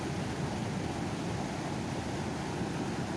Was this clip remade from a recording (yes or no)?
no